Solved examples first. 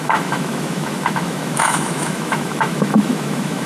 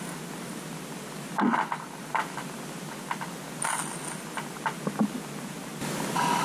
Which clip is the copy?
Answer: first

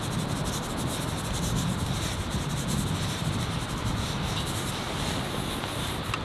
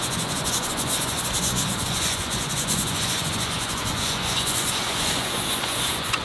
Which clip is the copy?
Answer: second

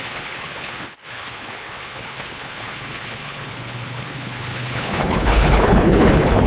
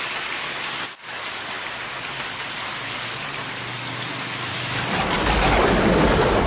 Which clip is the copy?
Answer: first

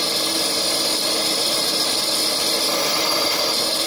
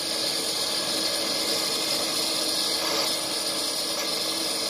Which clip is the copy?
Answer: first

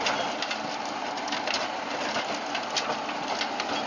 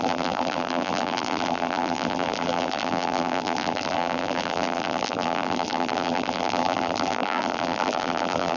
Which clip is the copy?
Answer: second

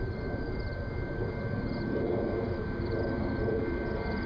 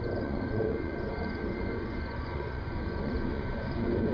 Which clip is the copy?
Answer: second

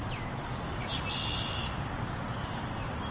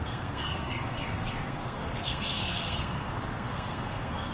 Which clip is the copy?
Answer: second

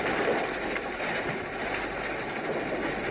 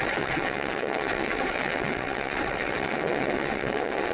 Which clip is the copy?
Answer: second